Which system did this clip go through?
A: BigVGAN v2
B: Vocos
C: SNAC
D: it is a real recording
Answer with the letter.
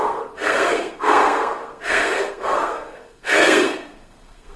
C